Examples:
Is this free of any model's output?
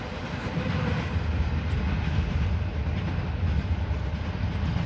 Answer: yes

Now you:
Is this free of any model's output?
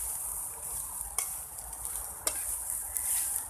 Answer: yes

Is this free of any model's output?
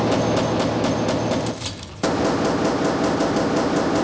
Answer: yes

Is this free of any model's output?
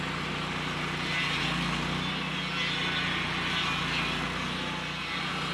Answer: yes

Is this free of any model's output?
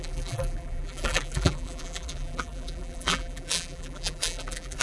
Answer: no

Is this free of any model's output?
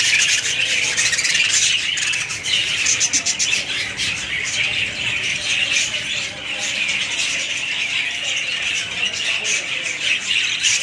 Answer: no